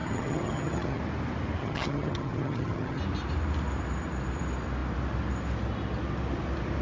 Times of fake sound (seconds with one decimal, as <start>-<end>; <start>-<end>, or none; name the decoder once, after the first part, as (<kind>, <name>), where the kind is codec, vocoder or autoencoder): 0.0-1.0 (vocoder, HiFi-GAN); 1.6-3.0